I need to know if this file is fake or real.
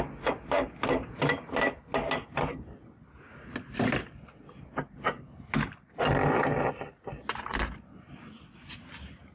real